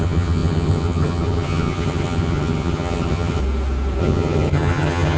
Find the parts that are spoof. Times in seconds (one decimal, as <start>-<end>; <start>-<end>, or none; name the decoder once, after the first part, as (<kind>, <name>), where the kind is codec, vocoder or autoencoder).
0.0-3.4 (vocoder, HiFi-GAN); 4.0-5.2